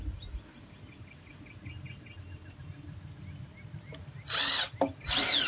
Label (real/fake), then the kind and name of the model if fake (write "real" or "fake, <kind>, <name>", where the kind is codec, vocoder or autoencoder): real